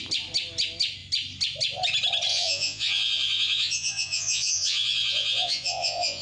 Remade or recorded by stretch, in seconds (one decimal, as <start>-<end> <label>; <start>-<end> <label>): 0.0-2.3 recorded; 2.3-6.2 remade